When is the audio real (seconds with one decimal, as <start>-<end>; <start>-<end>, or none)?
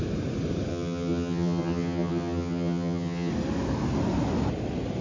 0.0-0.7; 3.3-5.0